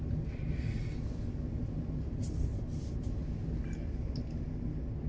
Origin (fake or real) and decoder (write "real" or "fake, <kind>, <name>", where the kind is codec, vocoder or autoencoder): real